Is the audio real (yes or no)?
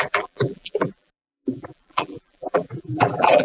no